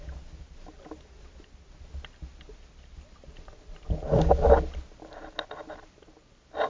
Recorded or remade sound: recorded